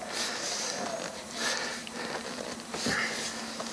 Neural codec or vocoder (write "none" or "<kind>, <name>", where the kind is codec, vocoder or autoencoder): none